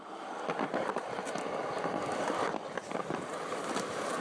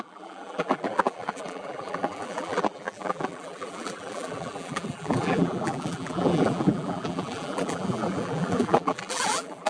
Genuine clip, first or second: first